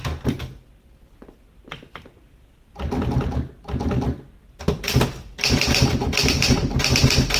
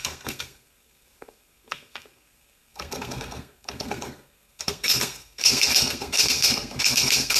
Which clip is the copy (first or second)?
second